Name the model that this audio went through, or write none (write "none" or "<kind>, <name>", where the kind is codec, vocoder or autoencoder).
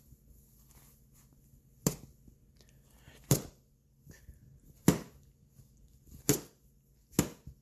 none